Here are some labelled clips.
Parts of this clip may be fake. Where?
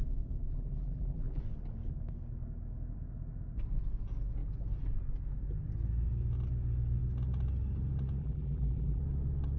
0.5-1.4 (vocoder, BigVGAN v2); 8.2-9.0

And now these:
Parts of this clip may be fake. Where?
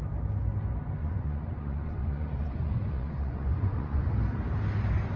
1.0-4.1 (vocoder, Vocos)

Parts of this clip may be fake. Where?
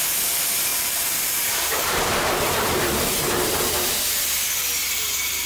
0.7-4.0 (vocoder, BigVGAN v2)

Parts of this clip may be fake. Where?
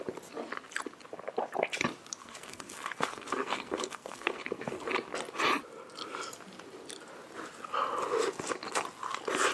2.2-4.9 (codec, SNAC)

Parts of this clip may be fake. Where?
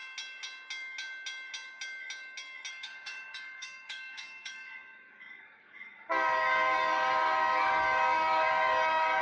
2.7-9.2 (codec, DAC)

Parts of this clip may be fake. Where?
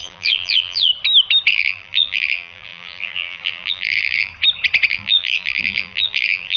0.0-0.9 (vocoder, BigVGAN v2); 1.5-4.3; 4.9-6.6